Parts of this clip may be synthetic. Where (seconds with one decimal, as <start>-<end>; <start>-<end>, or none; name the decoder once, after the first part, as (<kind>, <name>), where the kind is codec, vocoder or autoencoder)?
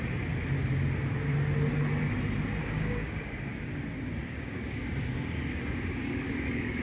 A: 2.6-3.6 (codec, DAC); 4.1-6.8